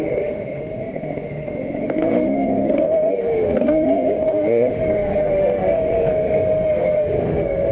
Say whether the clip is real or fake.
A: fake